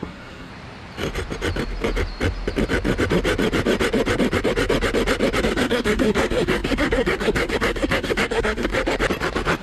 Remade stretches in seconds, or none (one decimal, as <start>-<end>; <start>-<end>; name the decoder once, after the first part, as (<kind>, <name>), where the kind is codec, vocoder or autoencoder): 0.0-0.5 (codec, SNAC); 5.4-8.7